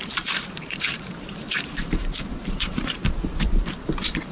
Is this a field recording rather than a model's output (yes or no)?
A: no